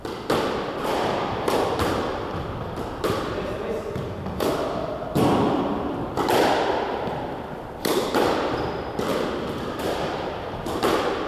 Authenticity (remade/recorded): remade